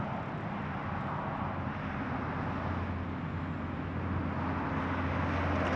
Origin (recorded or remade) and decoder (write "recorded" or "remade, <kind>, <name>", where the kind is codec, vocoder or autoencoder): recorded